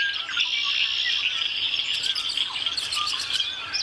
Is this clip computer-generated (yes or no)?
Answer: no